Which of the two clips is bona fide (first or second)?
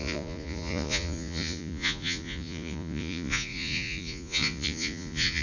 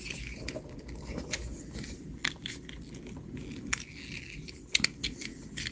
second